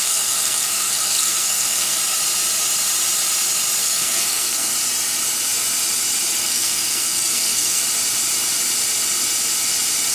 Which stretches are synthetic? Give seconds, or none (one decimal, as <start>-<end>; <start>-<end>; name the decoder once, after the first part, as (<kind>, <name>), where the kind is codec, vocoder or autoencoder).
0.0-2.0 (codec, SNAC); 3.8-4.7; 6.4-7.8